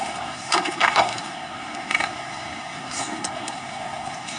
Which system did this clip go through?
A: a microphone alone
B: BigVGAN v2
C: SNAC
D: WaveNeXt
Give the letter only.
C